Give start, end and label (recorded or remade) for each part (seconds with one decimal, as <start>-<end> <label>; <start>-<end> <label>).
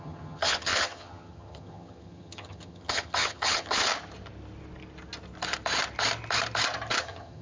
0.0-3.9 remade; 3.9-7.0 recorded; 7.0-7.4 remade